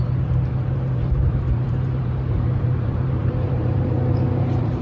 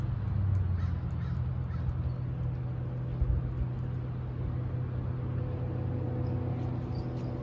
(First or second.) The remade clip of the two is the first